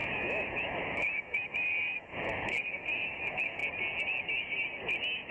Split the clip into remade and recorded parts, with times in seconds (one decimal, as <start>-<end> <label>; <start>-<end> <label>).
0.0-3.6 remade; 3.6-5.3 recorded